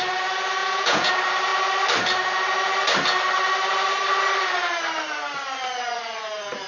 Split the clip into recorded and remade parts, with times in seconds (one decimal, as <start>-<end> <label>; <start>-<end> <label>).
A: 0.0-0.6 recorded; 0.6-1.1 remade; 1.1-6.7 recorded